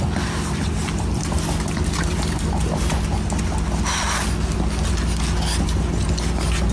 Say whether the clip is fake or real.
real